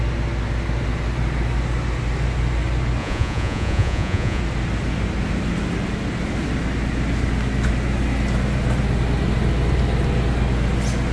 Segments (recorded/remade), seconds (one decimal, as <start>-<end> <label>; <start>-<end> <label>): 0.0-3.0 recorded; 3.0-4.4 remade; 4.4-11.1 recorded